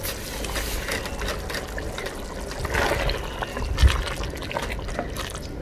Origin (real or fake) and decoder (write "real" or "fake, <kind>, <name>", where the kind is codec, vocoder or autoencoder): real